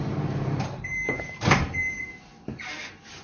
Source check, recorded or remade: remade